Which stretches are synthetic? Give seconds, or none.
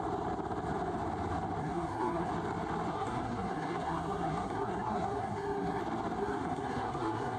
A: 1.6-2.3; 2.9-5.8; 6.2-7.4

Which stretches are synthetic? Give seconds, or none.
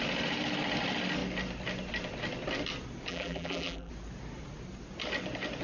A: 3.1-3.9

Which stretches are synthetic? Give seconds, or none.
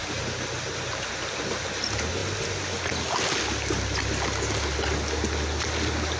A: none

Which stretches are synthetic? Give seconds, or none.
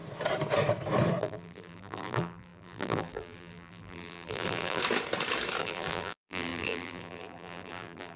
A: 1.2-4.8; 5.6-8.2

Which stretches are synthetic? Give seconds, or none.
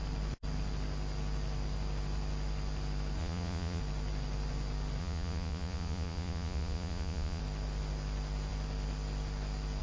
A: 3.2-3.8; 5.0-7.4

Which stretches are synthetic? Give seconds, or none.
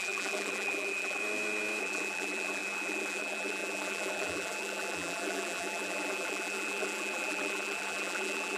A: 0.0-1.2; 1.8-8.6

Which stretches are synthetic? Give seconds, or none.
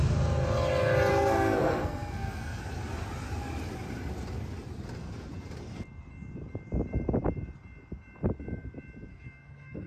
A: 1.1-2.6; 9.1-9.9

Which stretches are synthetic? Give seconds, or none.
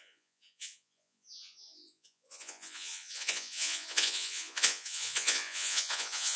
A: 0.0-6.4